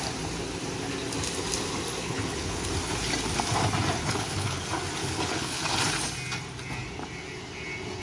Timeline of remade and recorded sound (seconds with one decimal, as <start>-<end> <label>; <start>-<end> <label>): 0.0-2.0 recorded; 2.0-2.7 remade; 2.7-4.0 recorded; 4.0-4.6 remade; 4.6-5.0 recorded; 5.0-5.6 remade; 5.6-8.0 recorded